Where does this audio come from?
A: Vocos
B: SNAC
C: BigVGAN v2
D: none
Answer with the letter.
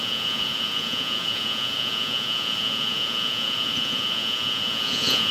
A